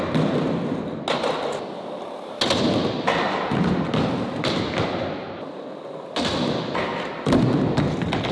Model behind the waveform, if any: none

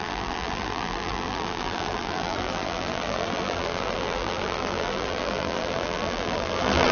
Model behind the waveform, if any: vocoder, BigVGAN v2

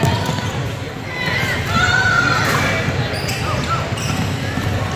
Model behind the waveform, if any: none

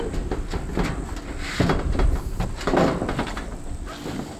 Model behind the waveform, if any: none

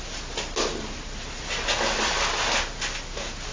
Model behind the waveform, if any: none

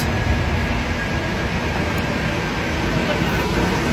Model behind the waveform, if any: none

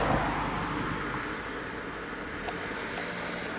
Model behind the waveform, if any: none